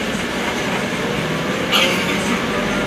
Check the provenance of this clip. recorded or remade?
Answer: recorded